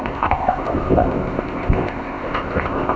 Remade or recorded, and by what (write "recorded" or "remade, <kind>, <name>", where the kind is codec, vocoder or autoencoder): remade, codec, ZipCodec